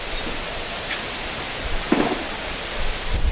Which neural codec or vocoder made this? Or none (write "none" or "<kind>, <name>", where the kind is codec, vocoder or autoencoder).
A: none